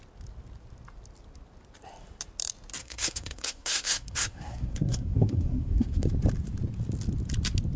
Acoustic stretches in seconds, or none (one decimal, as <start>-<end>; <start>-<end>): 0.0-2.8; 6.1-7.8